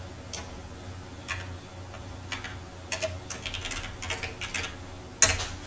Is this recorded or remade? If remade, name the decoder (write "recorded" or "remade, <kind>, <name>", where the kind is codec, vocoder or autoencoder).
recorded